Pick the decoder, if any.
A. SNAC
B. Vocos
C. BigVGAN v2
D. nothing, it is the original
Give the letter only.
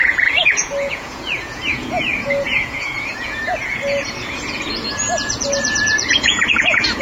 B